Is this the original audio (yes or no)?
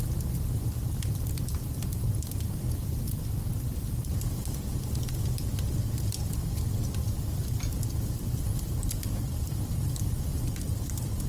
yes